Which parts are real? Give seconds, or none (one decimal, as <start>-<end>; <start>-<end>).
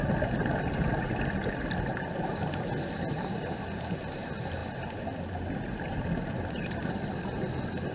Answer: 0.0-7.9